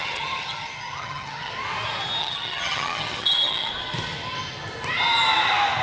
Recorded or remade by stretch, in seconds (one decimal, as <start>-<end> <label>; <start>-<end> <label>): 0.0-1.5 remade; 1.5-2.2 recorded; 2.2-3.7 remade; 3.7-5.8 recorded